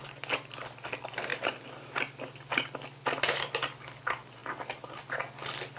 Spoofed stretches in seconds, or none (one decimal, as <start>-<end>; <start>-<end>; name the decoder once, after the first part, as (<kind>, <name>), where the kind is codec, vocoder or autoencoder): none